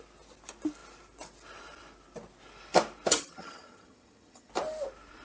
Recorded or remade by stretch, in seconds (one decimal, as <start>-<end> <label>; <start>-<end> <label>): 0.0-3.1 recorded; 3.1-4.5 remade; 4.5-5.2 recorded